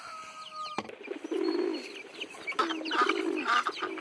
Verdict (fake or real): real